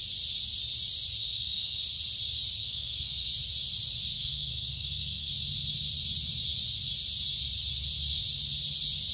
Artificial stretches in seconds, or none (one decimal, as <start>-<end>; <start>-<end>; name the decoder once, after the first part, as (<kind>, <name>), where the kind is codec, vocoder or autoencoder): 1.2-1.8 (codec, SNAC); 2.6-3.3; 4.1-5.3